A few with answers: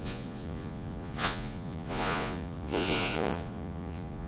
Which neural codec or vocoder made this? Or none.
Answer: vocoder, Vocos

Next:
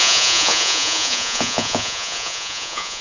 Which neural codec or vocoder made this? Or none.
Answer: vocoder, Vocos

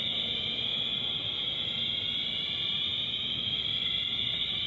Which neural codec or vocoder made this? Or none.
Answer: none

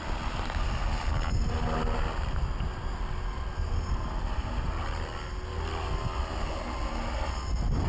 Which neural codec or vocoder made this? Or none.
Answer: none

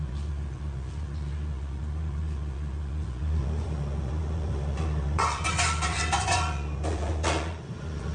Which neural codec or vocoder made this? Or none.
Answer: vocoder, Vocos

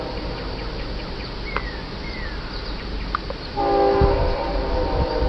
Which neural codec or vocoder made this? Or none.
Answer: none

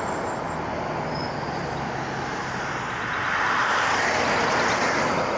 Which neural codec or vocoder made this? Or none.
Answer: none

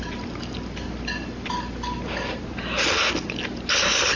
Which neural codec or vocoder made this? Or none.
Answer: none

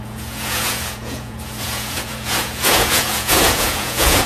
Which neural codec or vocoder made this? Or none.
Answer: vocoder, Vocos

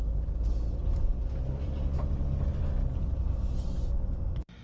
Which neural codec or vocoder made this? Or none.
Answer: none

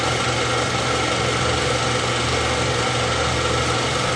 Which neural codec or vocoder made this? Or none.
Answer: none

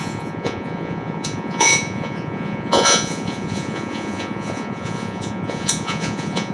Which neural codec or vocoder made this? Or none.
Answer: vocoder, Vocos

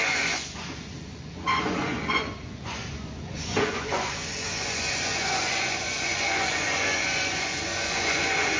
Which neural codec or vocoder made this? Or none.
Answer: vocoder, Vocos